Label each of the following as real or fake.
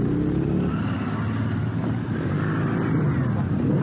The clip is real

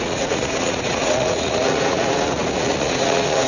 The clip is fake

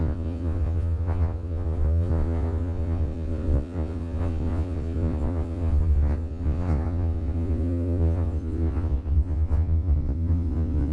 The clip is fake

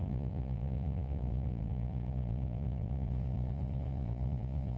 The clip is fake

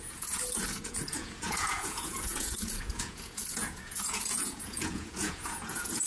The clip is fake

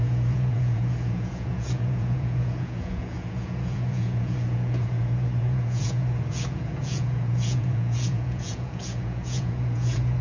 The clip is fake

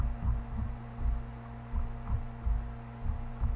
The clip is real